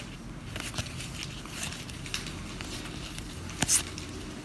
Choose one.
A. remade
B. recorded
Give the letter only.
B